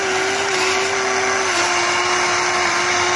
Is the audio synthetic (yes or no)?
no